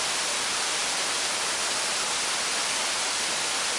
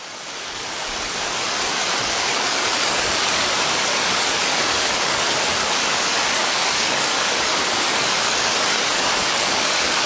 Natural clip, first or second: first